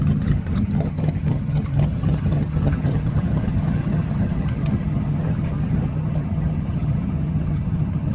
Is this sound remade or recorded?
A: remade